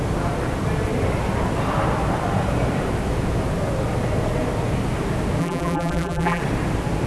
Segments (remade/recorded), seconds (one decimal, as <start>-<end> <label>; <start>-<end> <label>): 0.0-5.4 recorded; 5.4-6.4 remade; 6.4-7.1 recorded